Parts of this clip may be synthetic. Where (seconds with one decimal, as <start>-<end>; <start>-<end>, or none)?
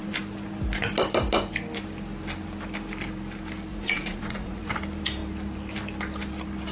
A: 3.7-4.7